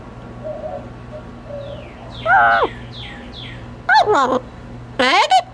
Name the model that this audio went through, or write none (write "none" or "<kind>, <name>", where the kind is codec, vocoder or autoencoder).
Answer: none